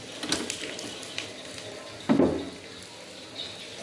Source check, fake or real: real